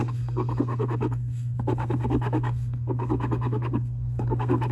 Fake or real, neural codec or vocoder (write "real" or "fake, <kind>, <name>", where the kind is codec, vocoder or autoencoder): fake, codec, SNAC